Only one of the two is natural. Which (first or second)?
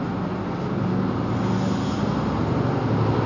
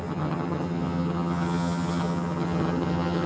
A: first